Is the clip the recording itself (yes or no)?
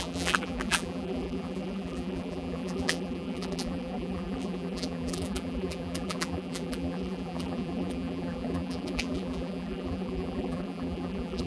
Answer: no